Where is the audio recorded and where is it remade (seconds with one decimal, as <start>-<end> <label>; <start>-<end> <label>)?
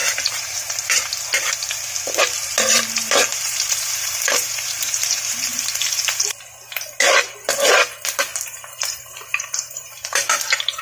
0.0-1.1 remade; 1.1-3.3 recorded; 3.3-6.4 remade; 6.4-8.3 recorded; 8.3-10.4 remade; 10.4-10.8 recorded